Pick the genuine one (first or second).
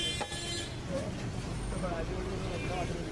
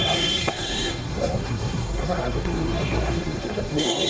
first